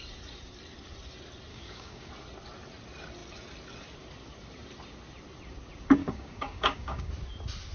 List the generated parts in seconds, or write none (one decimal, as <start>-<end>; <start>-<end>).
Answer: 1.5-2.1; 6.0-7.1